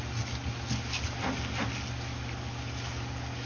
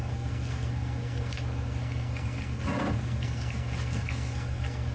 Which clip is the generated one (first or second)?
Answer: second